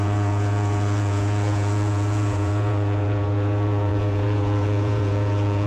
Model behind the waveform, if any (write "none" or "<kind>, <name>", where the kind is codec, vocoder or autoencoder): vocoder, Vocos